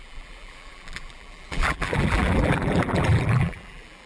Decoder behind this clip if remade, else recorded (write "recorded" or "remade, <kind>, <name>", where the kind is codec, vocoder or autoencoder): remade, vocoder, BigVGAN v2